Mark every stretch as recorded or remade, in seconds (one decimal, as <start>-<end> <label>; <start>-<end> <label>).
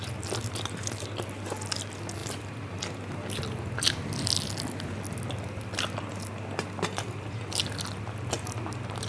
0.0-2.2 recorded; 2.2-2.8 remade; 2.8-9.1 recorded